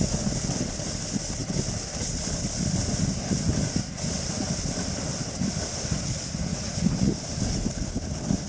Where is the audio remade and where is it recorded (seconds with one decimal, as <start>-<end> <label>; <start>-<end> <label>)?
0.0-6.5 recorded; 6.5-7.1 remade; 7.1-8.5 recorded